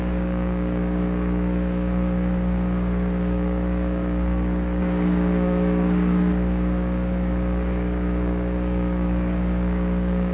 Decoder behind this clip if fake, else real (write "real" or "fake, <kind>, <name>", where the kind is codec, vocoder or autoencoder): fake, codec, DAC